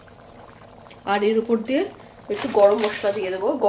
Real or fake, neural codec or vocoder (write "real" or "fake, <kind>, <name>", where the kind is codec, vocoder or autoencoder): fake, vocoder, BigVGAN v2